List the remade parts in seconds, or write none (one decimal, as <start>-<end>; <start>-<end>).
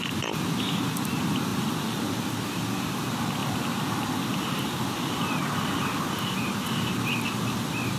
3.4-6.0